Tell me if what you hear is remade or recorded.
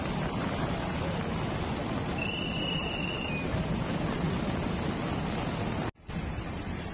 recorded